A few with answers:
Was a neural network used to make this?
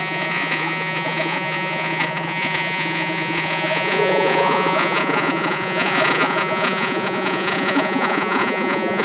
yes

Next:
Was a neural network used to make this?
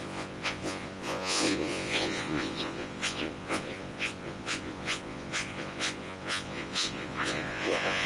yes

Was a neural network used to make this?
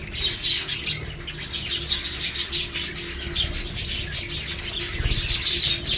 no